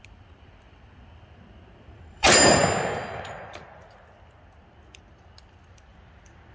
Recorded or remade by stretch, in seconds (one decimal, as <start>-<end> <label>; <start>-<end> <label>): 0.0-2.6 remade; 2.6-6.5 recorded